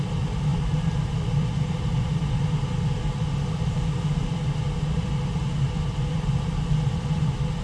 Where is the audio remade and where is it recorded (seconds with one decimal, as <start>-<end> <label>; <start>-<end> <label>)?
0.0-7.6 recorded